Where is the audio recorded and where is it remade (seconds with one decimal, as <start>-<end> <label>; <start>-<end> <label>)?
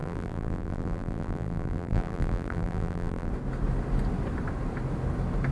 0.0-3.3 remade; 3.3-5.5 recorded